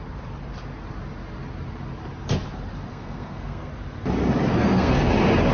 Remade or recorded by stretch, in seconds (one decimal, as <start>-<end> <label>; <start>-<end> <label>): 0.0-2.9 recorded; 2.9-3.7 remade; 3.7-4.5 recorded; 4.5-5.1 remade; 5.1-5.5 recorded